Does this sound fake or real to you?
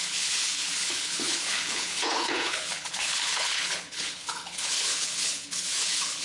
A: fake